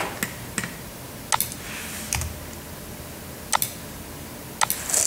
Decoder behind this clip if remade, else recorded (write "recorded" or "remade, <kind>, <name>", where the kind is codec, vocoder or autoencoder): recorded